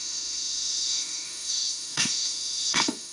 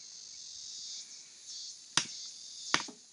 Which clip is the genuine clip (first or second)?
second